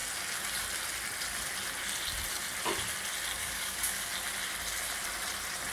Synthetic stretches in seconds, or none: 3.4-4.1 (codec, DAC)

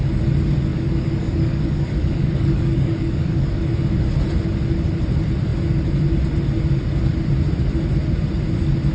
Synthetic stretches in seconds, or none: 0.7-3.6 (codec, DAC)

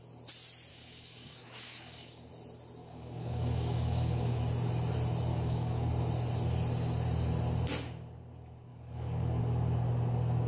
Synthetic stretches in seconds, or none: 0.7-2.3 (codec, DAC); 2.8-4.4; 5.3-5.9; 8.7-9.4

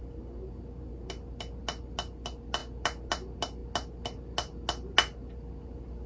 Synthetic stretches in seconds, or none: none